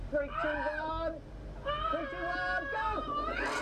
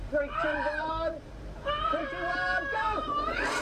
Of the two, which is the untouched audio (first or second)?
first